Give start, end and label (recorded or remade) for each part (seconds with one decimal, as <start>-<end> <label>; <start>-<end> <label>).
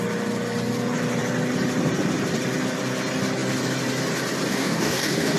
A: 0.0-4.5 recorded; 4.5-5.4 remade